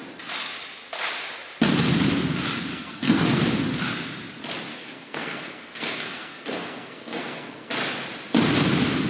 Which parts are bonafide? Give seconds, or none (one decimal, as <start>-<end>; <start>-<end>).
0.0-2.7; 3.4-4.7; 7.7-9.1